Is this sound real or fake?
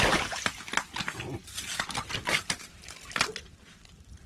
real